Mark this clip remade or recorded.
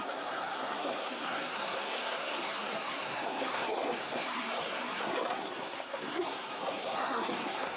remade